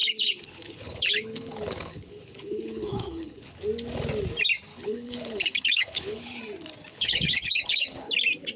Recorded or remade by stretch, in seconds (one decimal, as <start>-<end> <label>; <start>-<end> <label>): 0.0-3.6 remade; 3.6-4.7 recorded; 4.7-6.4 remade; 6.4-6.9 recorded; 6.9-8.1 remade; 8.1-8.6 recorded